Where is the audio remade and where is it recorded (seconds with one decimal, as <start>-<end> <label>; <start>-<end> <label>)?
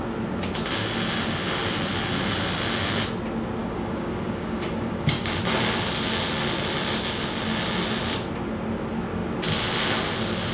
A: 0.0-3.6 recorded; 3.6-5.3 remade; 5.3-10.5 recorded